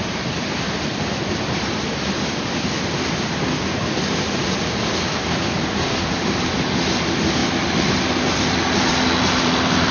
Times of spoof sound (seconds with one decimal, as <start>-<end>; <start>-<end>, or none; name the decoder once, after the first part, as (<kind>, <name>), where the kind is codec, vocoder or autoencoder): 0.0-7.4 (vocoder, BigVGAN v2); 9.4-9.9